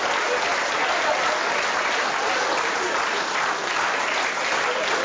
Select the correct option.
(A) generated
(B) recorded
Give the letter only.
B